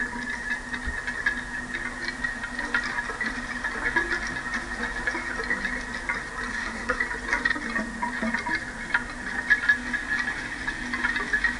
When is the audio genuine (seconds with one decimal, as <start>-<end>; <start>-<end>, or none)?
0.0-6.5; 7.0-11.6

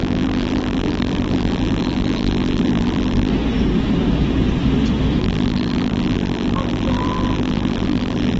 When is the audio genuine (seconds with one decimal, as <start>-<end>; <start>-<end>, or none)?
3.3-5.2